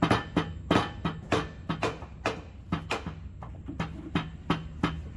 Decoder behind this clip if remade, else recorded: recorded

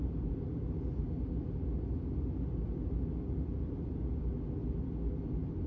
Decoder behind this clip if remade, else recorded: recorded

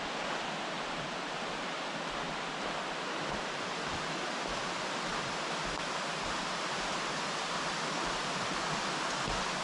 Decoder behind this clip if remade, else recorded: recorded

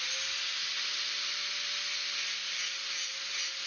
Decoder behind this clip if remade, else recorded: recorded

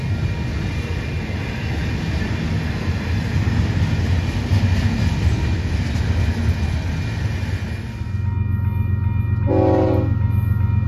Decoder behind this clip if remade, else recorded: recorded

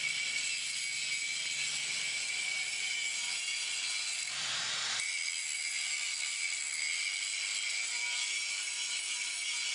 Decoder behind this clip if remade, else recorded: recorded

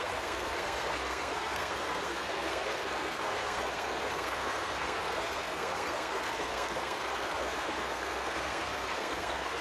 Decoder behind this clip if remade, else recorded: remade, codec, SNAC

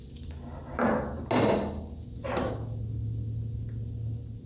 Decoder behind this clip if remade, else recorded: recorded